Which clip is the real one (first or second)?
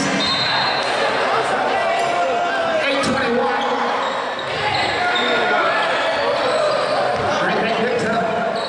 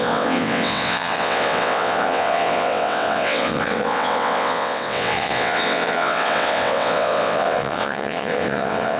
first